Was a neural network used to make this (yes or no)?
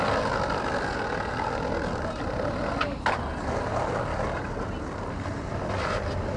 no